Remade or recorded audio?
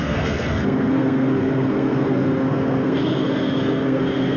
remade